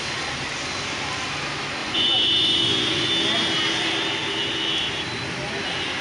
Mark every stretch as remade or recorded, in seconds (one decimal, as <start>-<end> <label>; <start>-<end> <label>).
0.0-1.8 recorded; 1.8-3.1 remade; 3.1-6.0 recorded

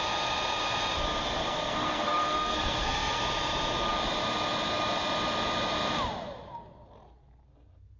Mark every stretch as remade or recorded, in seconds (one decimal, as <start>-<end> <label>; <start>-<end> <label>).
0.0-1.4 recorded; 1.4-3.2 remade; 3.2-8.0 recorded

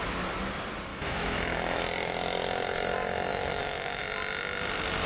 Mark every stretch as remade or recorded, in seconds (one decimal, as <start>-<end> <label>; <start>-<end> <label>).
0.0-0.9 recorded; 0.9-1.8 remade; 1.8-3.3 recorded; 3.3-4.0 remade; 4.0-5.1 recorded

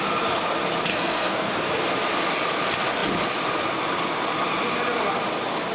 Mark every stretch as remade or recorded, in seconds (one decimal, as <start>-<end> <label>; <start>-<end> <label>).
0.0-0.9 recorded; 0.9-1.5 remade; 1.5-5.7 recorded

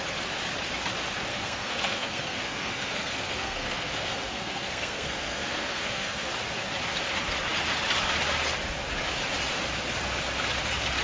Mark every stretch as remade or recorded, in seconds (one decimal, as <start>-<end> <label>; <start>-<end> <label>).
0.0-1.3 recorded; 1.3-6.3 remade; 6.3-11.0 recorded

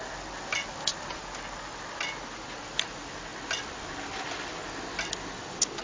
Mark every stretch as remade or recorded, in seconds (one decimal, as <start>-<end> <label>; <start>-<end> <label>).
0.0-5.8 recorded

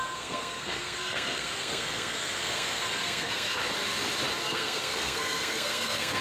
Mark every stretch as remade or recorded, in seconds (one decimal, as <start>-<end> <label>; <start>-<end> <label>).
0.0-3.6 remade; 3.6-4.4 recorded; 4.4-6.2 remade